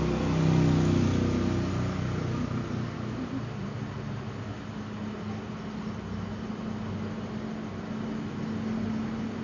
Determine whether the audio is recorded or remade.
recorded